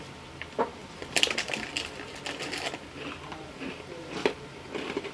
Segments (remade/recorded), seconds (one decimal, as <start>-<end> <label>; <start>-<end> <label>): 0.0-5.1 recorded